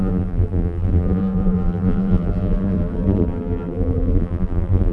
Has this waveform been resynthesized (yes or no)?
yes